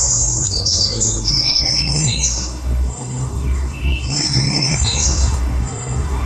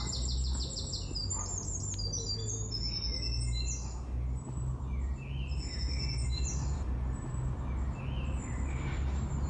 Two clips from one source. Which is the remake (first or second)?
first